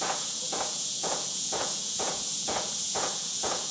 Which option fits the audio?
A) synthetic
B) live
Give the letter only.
A